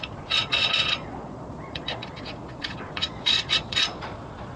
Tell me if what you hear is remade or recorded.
remade